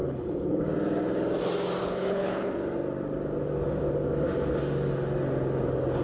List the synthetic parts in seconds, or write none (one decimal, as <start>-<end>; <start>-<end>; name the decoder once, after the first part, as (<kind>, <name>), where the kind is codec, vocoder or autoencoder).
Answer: 0.0-0.6 (codec, HILCodec); 1.8-2.5